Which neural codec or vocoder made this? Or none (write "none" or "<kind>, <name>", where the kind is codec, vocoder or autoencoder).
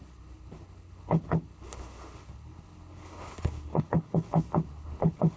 codec, HILCodec